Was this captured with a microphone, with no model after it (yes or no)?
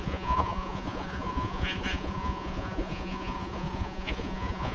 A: no